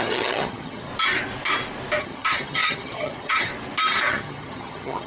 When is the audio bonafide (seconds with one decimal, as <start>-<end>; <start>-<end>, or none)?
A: 0.9-2.0; 3.5-4.1